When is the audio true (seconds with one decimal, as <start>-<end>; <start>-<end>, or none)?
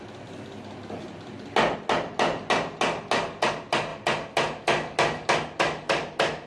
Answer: 0.0-6.5